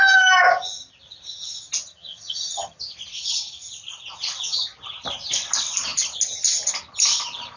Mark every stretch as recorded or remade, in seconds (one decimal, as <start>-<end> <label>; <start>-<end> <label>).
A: 0.0-1.8 recorded; 1.8-2.8 remade; 2.8-7.6 recorded